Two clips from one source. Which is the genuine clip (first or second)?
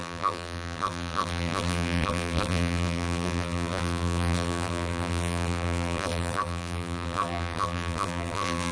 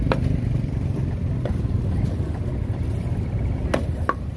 second